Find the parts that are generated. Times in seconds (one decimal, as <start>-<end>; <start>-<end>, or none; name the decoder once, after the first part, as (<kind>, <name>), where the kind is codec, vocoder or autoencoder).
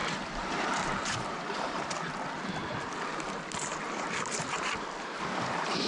0.0-1.9 (vocoder, BigVGAN v2)